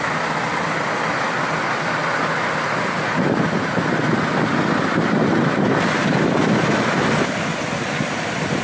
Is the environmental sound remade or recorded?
recorded